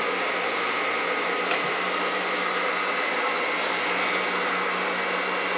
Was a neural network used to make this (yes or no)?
no